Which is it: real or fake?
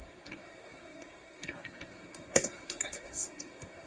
fake